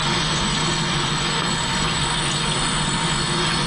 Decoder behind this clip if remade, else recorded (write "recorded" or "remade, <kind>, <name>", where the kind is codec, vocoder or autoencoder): remade, vocoder, Vocos